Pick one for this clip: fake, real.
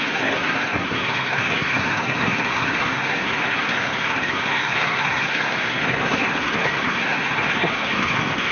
fake